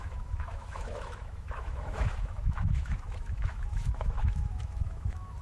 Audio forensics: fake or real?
fake